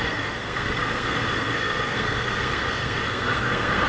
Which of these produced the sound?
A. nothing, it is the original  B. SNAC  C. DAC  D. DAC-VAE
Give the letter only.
B